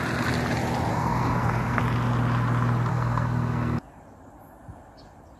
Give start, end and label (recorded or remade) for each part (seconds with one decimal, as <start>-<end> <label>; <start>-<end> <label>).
0.0-0.9 recorded; 0.9-1.8 remade; 1.8-2.9 recorded; 2.9-3.8 remade; 3.8-5.4 recorded